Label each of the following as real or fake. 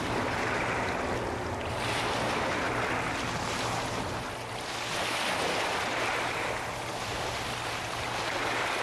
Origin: real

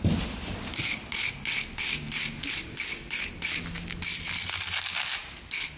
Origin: real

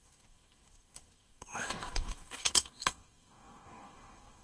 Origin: fake